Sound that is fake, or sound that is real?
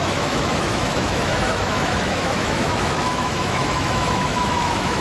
fake